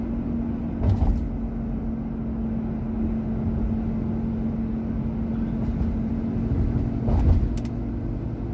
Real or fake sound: real